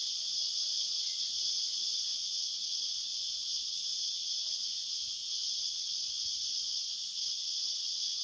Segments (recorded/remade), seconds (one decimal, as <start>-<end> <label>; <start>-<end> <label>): 0.0-8.2 remade